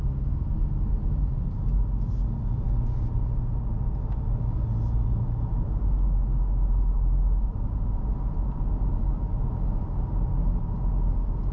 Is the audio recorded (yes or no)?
yes